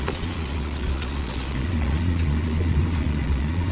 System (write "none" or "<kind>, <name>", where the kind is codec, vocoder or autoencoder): vocoder, Vocos